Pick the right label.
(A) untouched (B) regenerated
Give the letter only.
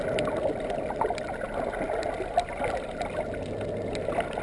A